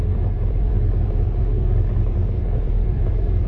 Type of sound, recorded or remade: remade